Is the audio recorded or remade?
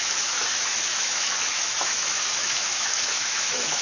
remade